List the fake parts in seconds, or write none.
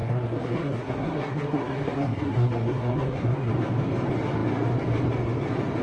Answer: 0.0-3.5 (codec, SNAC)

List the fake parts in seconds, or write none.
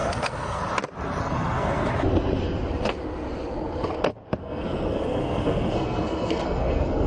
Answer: 0.0-0.6 (codec, SNAC); 1.2-1.9; 4.4-7.1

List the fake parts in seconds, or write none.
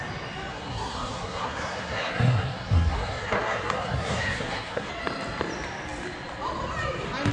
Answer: 0.5-4.9 (codec, SNAC)